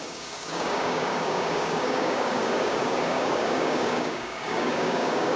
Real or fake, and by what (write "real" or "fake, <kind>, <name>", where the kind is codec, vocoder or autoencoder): fake, codec, DAC